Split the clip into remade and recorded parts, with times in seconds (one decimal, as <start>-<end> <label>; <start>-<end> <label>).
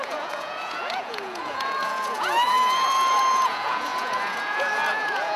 0.0-5.4 remade